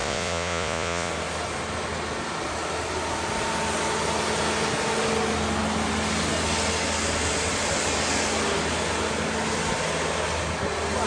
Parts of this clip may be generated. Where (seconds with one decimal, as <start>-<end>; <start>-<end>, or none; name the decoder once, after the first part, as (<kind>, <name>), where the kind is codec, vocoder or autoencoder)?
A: 0.0-1.1 (vocoder, Vocos)